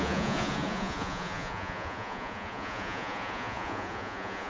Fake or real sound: fake